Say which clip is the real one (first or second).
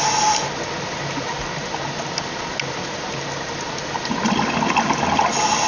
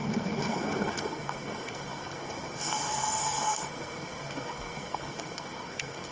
first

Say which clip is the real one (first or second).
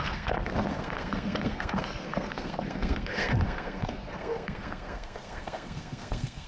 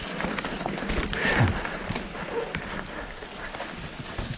second